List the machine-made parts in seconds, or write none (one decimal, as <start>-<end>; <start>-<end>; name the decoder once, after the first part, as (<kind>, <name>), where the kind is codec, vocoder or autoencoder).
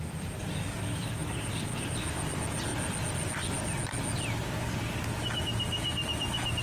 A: none